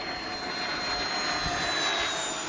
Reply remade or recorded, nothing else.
recorded